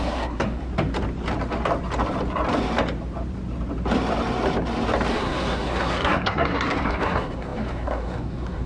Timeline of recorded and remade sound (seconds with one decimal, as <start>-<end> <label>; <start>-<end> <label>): 0.0-0.7 remade; 0.7-5.1 recorded; 5.1-8.7 remade